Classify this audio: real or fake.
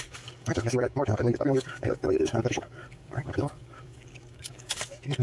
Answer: fake